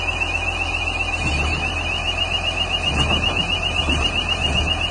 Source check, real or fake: real